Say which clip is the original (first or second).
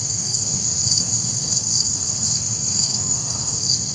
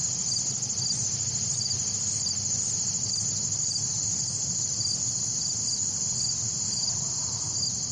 second